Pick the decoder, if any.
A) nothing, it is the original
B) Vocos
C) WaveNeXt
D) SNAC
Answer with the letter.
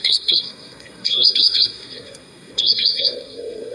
D